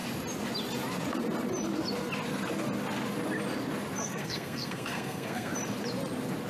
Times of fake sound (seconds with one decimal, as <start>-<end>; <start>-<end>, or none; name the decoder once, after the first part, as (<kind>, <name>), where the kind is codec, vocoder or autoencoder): 4.0-5.5 (codec, SNAC)